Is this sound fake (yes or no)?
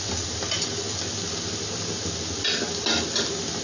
no